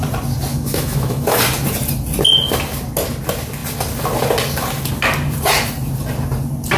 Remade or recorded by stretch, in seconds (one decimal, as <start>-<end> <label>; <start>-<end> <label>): 0.0-0.5 recorded; 0.5-1.4 remade; 1.4-6.8 recorded